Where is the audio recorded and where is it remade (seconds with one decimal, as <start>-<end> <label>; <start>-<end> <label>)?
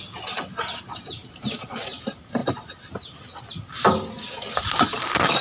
0.0-5.4 recorded